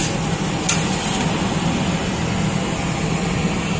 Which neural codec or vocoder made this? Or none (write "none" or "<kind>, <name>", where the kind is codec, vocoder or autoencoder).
none